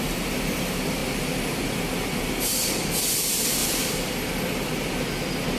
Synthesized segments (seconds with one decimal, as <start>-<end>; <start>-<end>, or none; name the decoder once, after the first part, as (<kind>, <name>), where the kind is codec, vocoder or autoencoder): 0.0-1.0 (vocoder, BigVGAN v2); 2.3-3.6